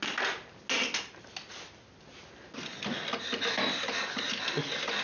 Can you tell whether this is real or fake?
real